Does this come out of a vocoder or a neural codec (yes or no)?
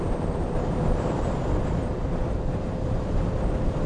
yes